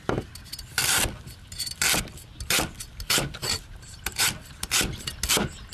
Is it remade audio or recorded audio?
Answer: recorded